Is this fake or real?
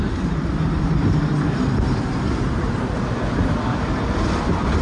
real